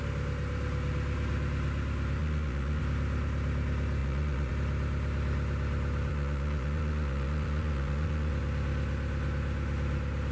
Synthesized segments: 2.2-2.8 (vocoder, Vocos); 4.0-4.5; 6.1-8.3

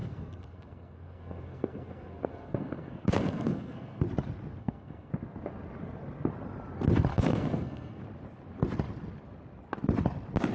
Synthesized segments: 0.0-4.0 (codec, SNAC); 4.6-5.1; 7.1-8.0

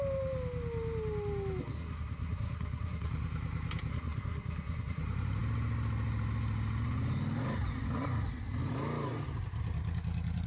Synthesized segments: 1.6-3.1 (codec, SNAC); 3.9-5.0

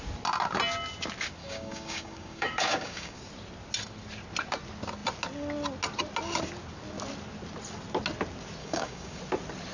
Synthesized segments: 1.4-3.2 (codec, DAC); 8.6-9.2

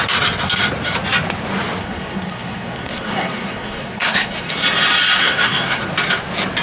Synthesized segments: 1.8-4.5 (codec, SNAC); 5.2-5.8

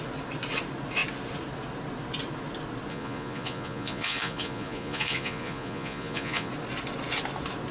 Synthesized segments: 2.9-6.5 (vocoder, Vocos)

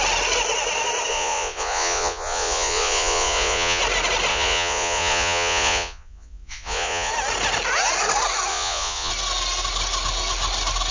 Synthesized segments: 1.1-3.8 (vocoder, Vocos); 4.3-7.1; 8.5-9.1